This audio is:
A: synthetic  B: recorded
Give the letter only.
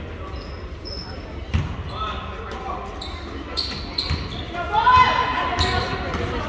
B